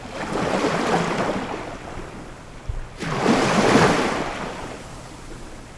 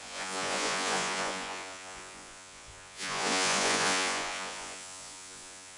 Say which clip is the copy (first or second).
second